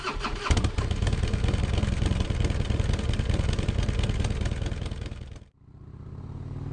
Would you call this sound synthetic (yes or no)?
yes